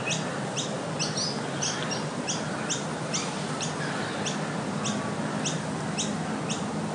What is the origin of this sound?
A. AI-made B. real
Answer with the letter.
B